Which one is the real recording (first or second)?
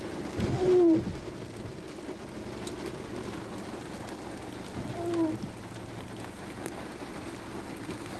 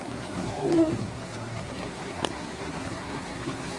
first